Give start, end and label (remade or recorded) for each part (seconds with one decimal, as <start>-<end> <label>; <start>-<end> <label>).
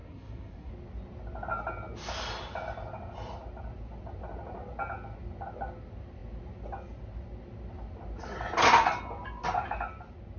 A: 0.0-0.7 remade; 0.7-10.4 recorded